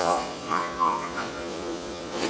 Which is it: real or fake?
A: fake